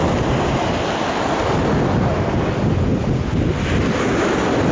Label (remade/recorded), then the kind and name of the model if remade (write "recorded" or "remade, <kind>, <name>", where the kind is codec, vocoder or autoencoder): recorded